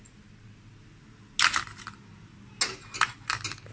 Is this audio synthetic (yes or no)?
no